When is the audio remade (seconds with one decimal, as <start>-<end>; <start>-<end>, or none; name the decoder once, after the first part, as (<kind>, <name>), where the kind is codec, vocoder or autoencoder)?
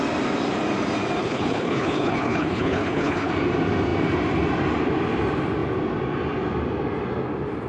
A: 1.2-3.3 (codec, HILCodec)